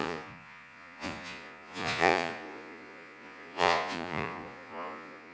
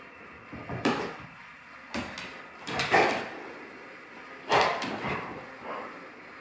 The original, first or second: second